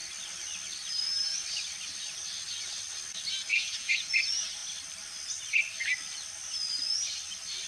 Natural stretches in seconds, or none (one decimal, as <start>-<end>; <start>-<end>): 0.0-3.5; 4.1-7.7